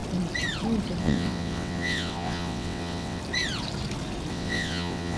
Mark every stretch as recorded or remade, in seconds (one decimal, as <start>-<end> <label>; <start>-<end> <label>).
0.0-1.0 recorded; 1.0-3.2 remade; 3.2-4.3 recorded; 4.3-5.2 remade